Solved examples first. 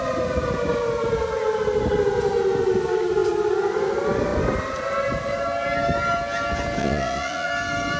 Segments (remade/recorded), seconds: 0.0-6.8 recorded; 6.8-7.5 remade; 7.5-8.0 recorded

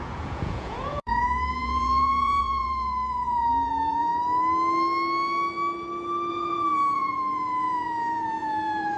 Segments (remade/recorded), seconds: 0.0-4.1 remade; 4.1-6.3 recorded; 6.3-9.0 remade

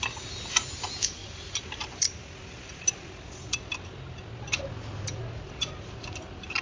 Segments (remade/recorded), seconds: 0.0-6.6 recorded

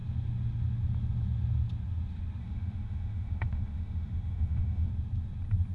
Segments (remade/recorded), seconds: 0.0-2.4 recorded; 2.4-4.9 remade; 4.9-5.7 recorded

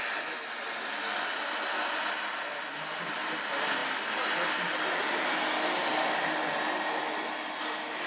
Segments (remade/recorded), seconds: 0.0-8.1 recorded

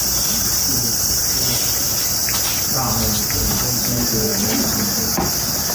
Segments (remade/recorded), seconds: 0.0-1.2 remade; 1.2-4.3 recorded; 4.3-5.7 remade

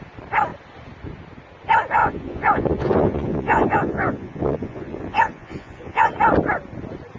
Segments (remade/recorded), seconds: 0.0-2.0 recorded; 2.0-6.1 remade; 6.1-7.2 recorded

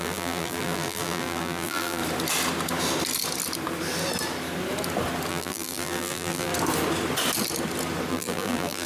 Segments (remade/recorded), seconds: 0.0-2.0 remade; 2.0-5.3 recorded; 5.3-6.5 remade; 6.5-8.1 recorded; 8.1-8.9 remade